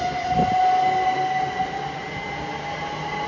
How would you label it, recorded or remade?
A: recorded